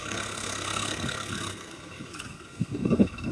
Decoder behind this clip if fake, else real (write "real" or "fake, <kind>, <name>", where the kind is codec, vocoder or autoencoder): fake, codec, SNAC